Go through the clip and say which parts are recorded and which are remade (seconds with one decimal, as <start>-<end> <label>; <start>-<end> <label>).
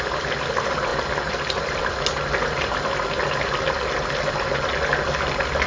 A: 0.0-5.7 recorded